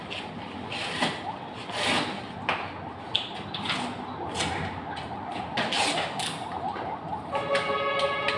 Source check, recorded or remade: recorded